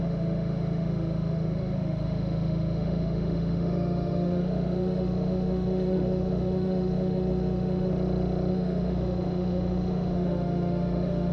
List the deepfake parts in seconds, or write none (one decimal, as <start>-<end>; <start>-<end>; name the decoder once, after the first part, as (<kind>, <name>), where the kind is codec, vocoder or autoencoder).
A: 0.0-7.9 (autoencoder, DAC-VAE); 8.5-11.3